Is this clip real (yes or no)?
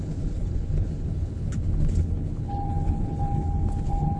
no